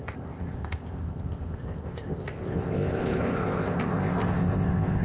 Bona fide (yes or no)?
no